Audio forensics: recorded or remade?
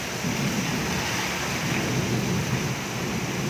recorded